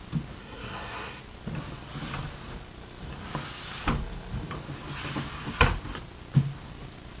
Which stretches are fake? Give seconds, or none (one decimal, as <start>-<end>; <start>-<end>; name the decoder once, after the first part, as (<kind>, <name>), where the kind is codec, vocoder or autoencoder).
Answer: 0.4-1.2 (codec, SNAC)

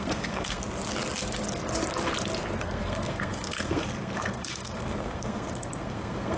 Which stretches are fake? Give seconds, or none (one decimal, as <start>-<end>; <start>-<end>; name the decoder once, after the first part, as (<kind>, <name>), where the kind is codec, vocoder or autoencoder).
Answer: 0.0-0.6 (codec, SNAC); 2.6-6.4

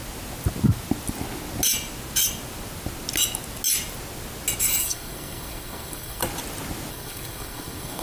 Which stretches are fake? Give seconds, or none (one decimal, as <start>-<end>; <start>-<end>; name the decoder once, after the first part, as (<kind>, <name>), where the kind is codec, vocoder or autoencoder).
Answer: 4.8-6.2 (codec, SNAC); 6.9-8.0

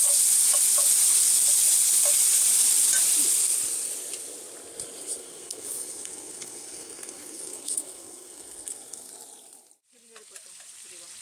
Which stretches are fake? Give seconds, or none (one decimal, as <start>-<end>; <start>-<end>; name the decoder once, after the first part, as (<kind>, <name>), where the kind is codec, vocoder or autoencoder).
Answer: 5.2-9.1 (codec, SNAC)

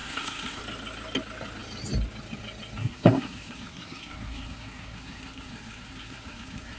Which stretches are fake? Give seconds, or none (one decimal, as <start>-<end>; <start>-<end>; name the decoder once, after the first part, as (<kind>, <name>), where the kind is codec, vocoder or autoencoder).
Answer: 0.0-0.6 (codec, SNAC); 2.8-6.8

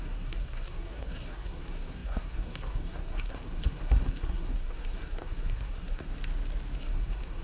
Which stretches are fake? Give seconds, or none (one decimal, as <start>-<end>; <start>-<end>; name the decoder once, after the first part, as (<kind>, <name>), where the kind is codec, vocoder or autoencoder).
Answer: 0.0-6.1 (codec, SNAC); 6.8-7.4

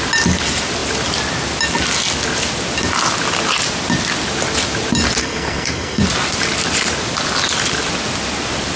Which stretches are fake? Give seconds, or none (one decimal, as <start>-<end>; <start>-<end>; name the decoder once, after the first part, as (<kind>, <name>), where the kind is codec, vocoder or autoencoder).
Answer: 5.2-6.0 (codec, SNAC)

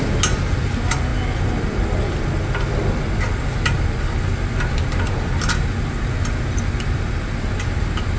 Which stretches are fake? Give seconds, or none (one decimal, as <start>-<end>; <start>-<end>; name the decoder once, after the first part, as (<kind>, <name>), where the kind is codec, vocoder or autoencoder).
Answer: none